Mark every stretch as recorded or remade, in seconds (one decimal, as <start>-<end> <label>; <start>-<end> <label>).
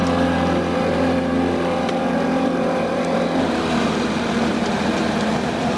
0.0-5.8 remade